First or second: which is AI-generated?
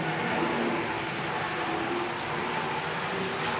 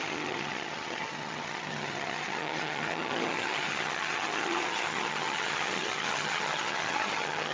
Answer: second